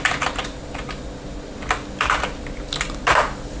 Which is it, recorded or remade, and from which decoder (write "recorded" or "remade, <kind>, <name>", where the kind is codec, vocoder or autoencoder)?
recorded